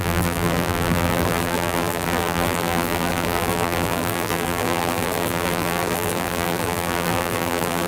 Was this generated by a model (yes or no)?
yes